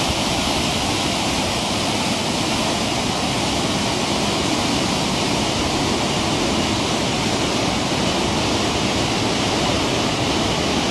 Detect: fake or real real